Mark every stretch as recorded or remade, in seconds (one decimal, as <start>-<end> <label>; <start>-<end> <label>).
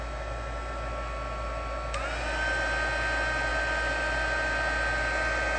0.0-5.6 recorded